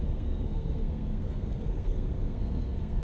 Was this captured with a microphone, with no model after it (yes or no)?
no